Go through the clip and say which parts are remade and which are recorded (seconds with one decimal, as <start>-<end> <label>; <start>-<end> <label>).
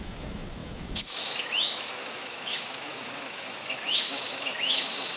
0.0-5.2 remade